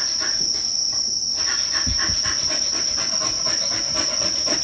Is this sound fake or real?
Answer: real